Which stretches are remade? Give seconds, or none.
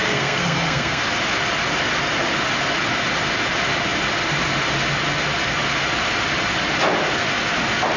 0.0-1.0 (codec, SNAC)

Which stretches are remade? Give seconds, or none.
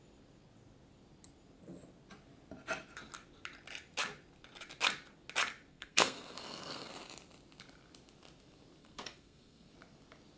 5.7-6.9 (codec, SNAC); 8.8-9.7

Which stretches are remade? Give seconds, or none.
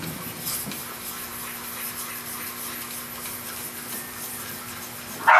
none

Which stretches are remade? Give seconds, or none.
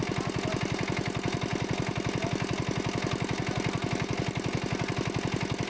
none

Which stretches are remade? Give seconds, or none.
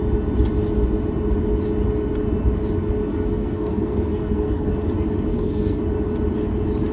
3.1-4.7 (codec, SNAC); 5.3-5.8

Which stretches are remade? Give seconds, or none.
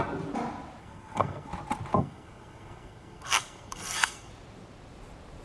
0.8-1.5 (codec, SNAC); 1.9-4.3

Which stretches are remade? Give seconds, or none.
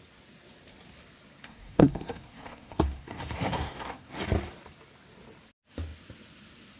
1.4-4.2 (codec, SNAC)